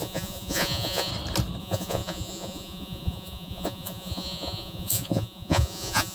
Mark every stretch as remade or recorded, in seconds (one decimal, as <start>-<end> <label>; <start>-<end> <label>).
0.0-1.1 remade; 1.1-1.6 recorded; 1.6-6.1 remade